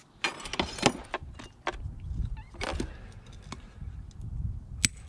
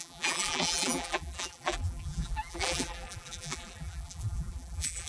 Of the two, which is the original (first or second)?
first